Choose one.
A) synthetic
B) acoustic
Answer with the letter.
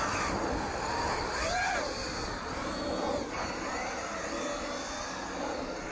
B